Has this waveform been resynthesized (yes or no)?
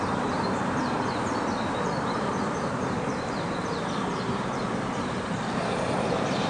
yes